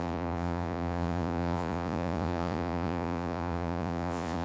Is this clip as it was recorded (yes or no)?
no